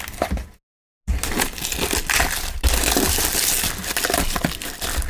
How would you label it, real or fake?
real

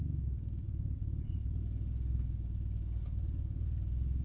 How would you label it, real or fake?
fake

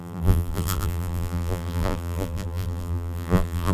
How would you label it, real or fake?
fake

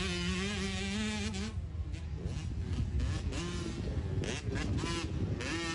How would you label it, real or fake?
real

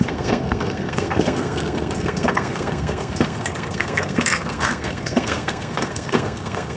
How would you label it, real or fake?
fake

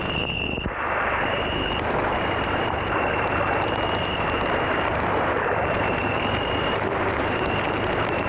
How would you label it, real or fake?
fake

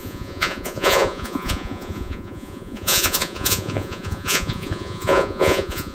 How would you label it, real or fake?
fake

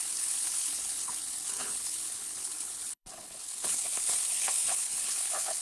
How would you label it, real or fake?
fake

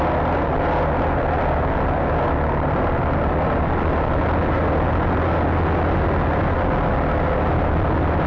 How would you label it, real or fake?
real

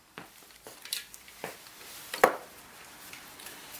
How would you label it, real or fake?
fake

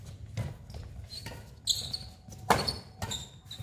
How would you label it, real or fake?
real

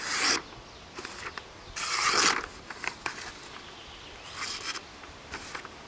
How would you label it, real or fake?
real